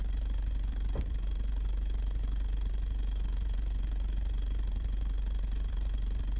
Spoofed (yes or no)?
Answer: yes